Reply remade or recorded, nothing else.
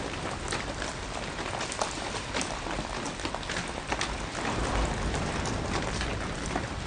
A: recorded